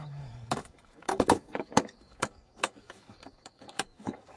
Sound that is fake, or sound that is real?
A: fake